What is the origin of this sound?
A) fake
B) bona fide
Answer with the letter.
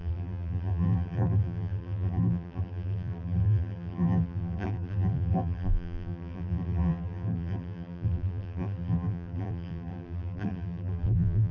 A